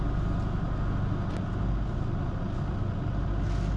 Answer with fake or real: real